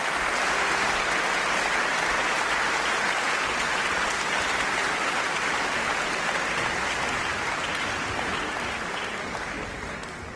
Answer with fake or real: real